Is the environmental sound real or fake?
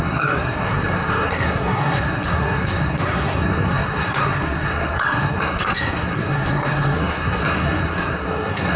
fake